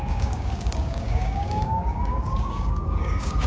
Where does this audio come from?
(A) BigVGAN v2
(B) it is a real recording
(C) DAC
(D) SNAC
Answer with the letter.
C